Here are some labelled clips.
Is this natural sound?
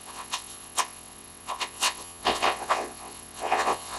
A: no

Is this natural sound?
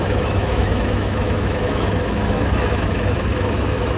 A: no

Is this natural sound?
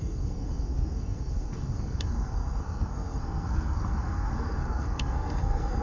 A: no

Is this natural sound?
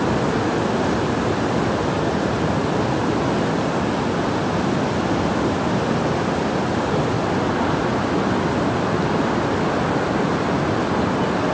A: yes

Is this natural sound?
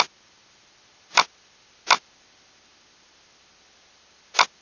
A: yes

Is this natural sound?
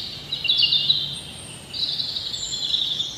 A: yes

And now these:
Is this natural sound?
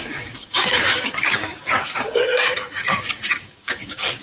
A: no